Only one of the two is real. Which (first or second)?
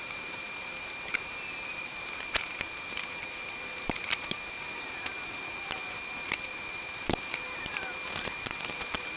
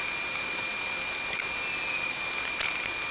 second